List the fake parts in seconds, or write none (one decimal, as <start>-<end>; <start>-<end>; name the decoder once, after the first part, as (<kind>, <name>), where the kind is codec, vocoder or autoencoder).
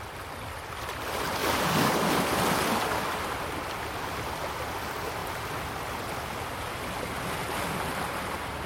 1.4-2.1 (codec, DAC)